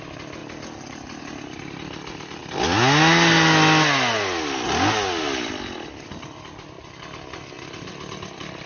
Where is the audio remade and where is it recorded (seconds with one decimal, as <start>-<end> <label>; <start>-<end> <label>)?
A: 0.0-8.7 recorded